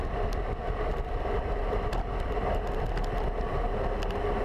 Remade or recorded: recorded